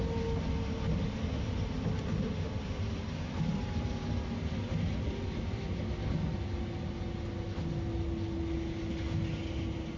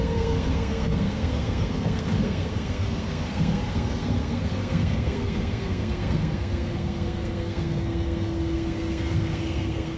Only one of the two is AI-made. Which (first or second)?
second